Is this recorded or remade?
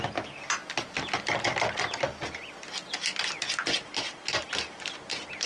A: recorded